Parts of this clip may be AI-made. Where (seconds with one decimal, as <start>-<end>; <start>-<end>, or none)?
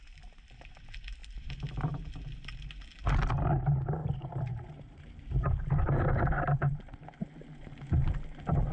1.2-2.1; 4.0-6.8